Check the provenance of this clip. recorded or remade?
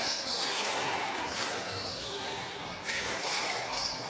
remade